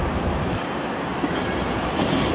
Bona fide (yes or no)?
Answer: yes